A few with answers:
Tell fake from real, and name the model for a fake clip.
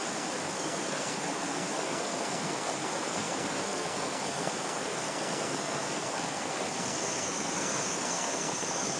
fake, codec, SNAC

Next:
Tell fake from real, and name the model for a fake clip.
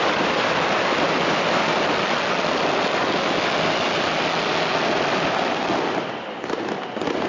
real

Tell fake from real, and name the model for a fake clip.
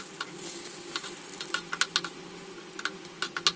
real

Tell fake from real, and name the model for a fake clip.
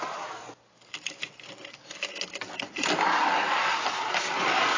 real